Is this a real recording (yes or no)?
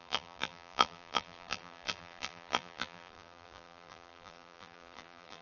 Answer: no